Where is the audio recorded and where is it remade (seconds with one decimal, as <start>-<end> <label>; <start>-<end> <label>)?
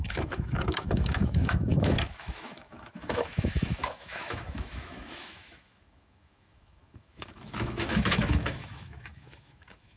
0.0-10.0 remade